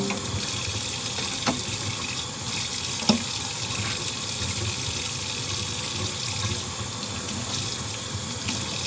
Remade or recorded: recorded